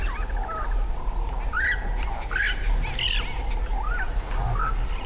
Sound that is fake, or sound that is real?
real